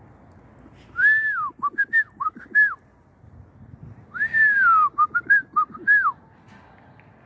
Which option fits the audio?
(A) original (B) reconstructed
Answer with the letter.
A